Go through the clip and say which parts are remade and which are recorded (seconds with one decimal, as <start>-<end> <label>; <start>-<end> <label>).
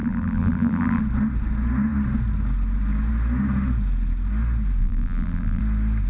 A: 0.0-1.0 remade; 1.0-4.8 recorded; 4.8-5.6 remade; 5.6-6.1 recorded